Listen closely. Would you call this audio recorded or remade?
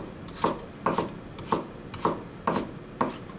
recorded